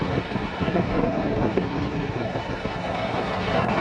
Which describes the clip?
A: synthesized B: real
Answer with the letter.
A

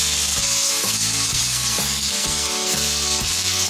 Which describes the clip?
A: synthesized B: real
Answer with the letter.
A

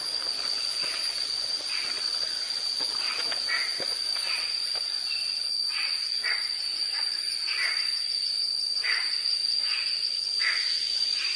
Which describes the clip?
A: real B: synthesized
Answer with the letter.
A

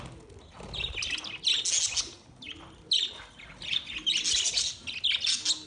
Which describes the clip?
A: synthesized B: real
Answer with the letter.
B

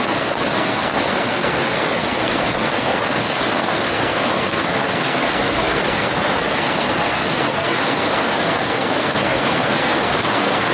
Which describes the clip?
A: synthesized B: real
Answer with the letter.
A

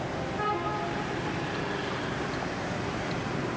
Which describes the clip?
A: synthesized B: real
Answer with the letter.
B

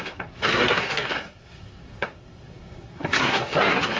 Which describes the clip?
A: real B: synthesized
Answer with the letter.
B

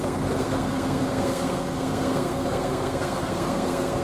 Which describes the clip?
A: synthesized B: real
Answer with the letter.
A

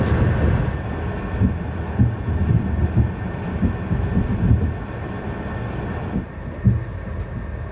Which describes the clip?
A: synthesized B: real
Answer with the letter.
B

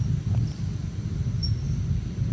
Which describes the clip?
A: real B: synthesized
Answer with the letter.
A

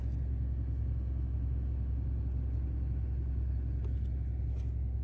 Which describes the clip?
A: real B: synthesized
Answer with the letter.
A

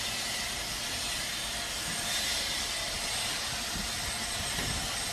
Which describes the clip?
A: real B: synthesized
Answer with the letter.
A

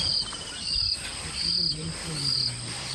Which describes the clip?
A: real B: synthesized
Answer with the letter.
A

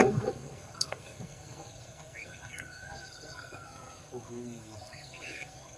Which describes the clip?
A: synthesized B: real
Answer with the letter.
A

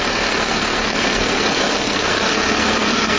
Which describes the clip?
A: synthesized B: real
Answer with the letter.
A